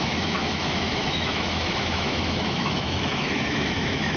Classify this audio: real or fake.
fake